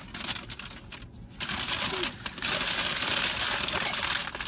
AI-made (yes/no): no